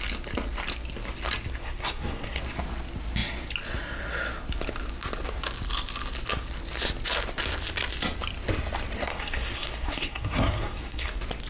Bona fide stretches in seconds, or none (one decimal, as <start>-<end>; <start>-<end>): 0.0-1.6; 2.4-9.1; 11.1-11.5